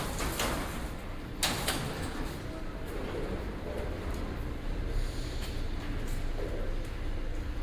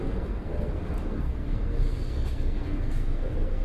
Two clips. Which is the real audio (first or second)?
first